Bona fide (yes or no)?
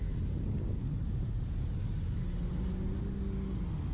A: yes